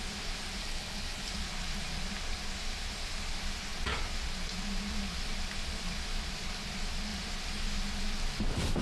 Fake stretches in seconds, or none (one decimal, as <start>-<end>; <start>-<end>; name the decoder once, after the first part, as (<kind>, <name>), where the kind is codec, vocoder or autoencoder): 0.6-1.3 (codec, HILCodec)

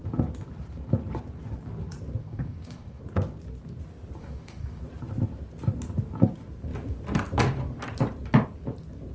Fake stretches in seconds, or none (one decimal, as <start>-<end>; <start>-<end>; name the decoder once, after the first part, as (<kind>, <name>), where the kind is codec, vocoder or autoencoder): 2.2-3.0 (codec, DAC); 4.2-4.8

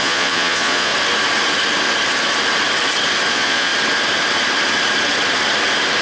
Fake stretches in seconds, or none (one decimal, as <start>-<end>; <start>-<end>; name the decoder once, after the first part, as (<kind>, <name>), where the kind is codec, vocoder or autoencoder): 0.0-0.9 (vocoder, Vocos); 3.3-3.7

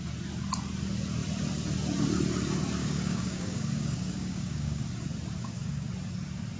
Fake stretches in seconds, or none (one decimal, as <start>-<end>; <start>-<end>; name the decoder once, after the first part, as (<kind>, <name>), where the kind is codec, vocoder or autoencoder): 2.8-4.8 (codec, DAC); 5.4-5.9

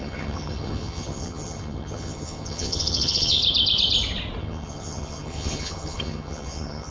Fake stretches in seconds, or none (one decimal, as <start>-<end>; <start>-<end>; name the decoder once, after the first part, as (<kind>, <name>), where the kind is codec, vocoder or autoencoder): 0.0-3.4 (vocoder, HiFi-GAN); 4.4-6.9